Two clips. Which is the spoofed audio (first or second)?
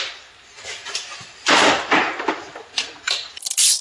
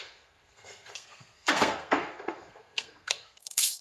second